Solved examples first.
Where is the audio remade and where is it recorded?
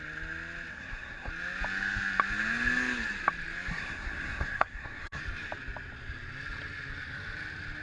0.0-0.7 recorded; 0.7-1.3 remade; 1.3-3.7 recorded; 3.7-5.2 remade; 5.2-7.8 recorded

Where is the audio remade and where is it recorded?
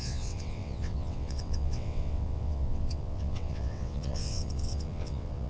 0.0-5.5 remade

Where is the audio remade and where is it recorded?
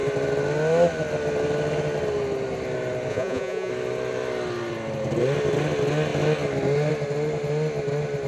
0.0-3.1 recorded; 3.1-3.7 remade; 3.7-8.3 recorded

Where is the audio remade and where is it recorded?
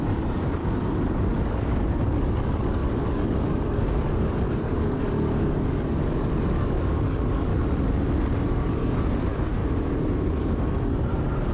0.0-0.6 remade; 0.6-1.2 recorded; 1.2-7.5 remade; 7.5-8.5 recorded; 8.5-9.6 remade; 9.6-11.5 recorded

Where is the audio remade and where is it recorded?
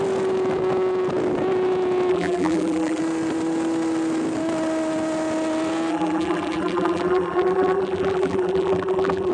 0.0-2.1 recorded; 2.1-3.0 remade; 3.0-5.9 recorded; 5.9-9.3 remade